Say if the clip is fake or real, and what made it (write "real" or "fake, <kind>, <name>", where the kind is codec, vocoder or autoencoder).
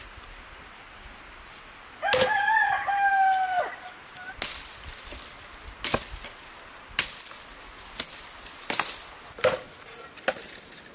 real